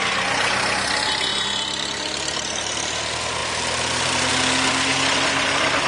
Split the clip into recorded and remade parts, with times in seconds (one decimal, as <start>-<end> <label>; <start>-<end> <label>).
0.0-1.3 recorded; 1.3-2.8 remade; 2.8-3.4 recorded; 3.4-4.3 remade; 4.3-4.9 recorded; 4.9-5.9 remade